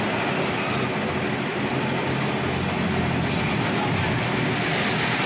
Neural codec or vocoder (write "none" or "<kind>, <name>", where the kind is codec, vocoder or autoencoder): none